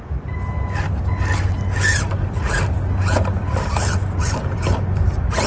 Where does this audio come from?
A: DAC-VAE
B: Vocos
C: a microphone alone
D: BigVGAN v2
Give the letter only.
C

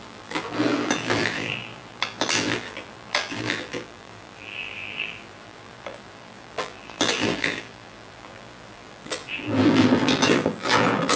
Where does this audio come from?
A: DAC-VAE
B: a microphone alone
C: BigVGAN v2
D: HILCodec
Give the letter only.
C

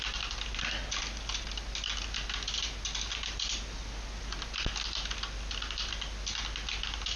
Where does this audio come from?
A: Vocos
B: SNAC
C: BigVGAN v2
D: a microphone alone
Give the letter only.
D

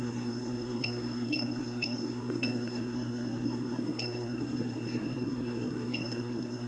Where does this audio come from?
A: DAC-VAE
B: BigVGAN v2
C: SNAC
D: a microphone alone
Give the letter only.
C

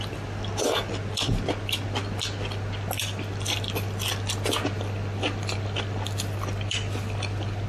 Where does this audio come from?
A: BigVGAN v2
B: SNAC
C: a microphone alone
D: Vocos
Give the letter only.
C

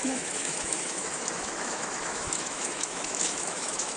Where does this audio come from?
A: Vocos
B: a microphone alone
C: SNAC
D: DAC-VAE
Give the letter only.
D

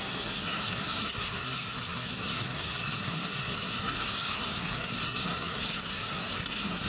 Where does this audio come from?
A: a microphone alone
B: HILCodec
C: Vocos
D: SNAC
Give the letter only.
D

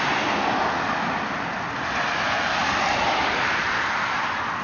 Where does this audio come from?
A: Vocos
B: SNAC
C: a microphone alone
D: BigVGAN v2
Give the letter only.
C